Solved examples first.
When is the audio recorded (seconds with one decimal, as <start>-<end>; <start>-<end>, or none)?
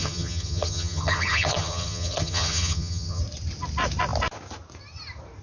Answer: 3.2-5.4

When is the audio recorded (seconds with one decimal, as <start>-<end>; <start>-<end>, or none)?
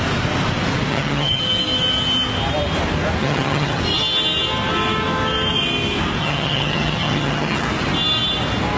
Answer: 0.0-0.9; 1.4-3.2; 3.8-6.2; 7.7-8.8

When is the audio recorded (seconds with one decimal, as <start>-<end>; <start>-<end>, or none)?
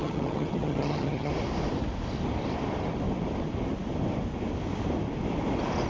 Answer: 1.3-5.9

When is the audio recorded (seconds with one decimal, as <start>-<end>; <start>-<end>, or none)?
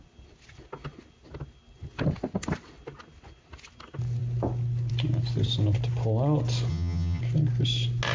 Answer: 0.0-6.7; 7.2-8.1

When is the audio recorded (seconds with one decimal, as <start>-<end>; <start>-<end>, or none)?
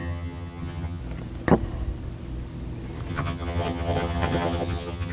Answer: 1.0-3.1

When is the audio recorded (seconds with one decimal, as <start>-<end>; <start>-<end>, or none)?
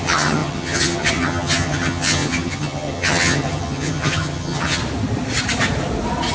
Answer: 4.8-6.3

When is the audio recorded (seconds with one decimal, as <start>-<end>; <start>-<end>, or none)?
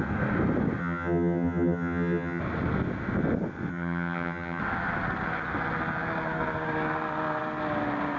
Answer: 0.0-0.8; 2.4-3.7; 4.6-8.2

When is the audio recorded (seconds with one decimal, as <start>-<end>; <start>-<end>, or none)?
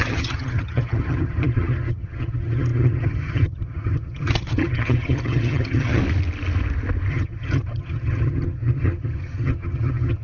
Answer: 6.0-7.1